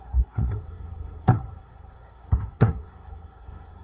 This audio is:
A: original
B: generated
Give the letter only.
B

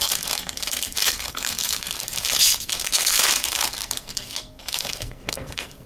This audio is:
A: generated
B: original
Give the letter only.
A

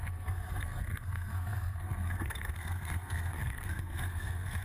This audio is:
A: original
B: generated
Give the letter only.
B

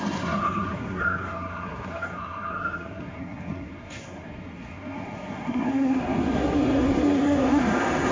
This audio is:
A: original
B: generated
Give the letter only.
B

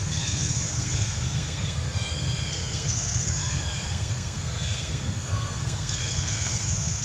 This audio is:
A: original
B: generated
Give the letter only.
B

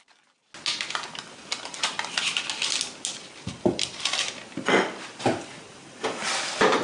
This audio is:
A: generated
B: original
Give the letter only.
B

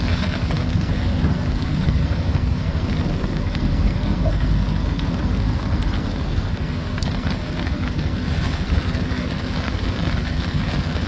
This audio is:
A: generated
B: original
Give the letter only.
A